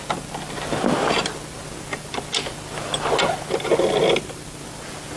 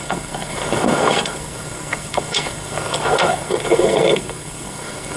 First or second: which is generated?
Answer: second